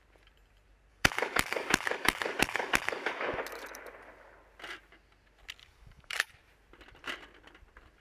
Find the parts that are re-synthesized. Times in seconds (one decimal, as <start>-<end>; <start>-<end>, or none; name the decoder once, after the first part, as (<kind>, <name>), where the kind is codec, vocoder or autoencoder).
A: 0.9-3.4 (codec, DAC); 5.6-6.3